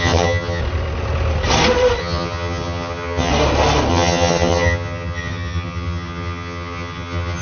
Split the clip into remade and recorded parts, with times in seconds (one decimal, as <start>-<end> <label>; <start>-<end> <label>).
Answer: 0.0-0.6 remade; 0.6-2.0 recorded; 2.0-3.3 remade; 3.3-3.9 recorded; 3.9-7.4 remade